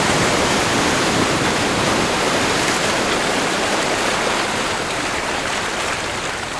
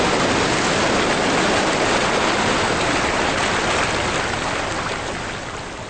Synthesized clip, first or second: first